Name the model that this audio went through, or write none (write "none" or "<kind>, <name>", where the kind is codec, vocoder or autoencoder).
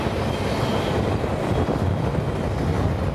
none